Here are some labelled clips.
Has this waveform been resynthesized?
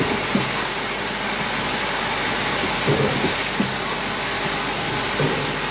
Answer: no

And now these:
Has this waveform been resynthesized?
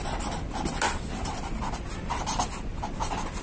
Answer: no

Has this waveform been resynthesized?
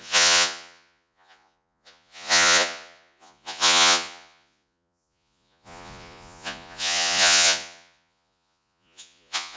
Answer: yes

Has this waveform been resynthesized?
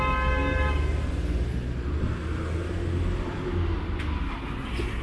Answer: no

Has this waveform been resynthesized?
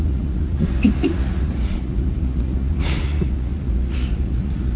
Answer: yes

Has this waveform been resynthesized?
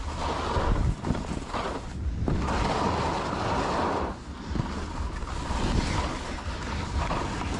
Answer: no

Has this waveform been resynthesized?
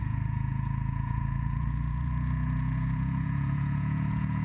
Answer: yes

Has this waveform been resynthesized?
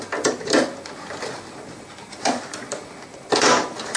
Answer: no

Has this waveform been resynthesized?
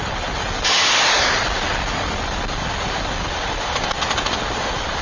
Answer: no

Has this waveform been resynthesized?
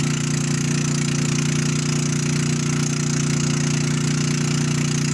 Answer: no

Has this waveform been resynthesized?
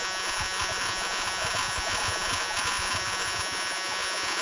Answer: yes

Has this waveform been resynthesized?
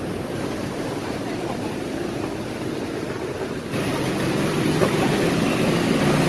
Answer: no